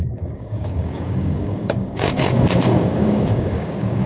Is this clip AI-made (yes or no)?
yes